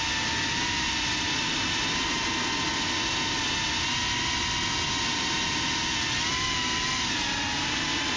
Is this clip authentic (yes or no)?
yes